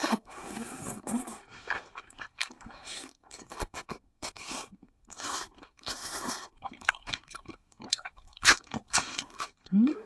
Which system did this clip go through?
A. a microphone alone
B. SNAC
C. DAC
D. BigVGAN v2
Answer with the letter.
B